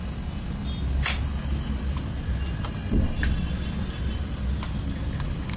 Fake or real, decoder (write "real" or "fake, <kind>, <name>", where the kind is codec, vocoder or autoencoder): real